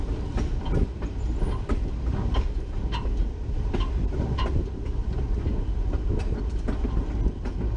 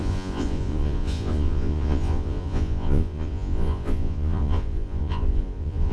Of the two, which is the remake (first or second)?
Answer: second